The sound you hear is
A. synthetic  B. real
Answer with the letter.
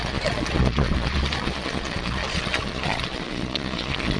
A